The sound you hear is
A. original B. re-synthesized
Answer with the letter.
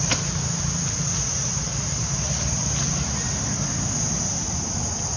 A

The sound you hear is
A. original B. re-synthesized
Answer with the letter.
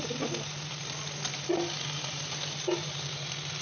A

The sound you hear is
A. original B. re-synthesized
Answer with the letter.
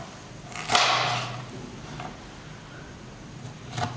A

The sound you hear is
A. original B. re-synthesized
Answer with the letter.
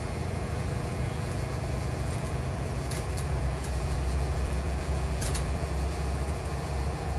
B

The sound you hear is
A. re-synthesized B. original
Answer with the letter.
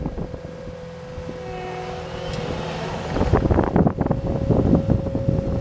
B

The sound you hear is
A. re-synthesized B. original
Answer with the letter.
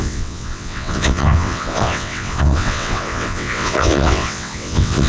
A